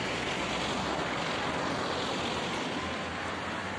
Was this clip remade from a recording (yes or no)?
no